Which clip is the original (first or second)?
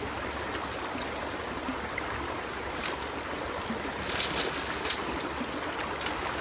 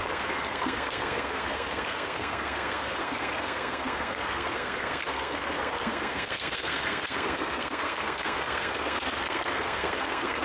first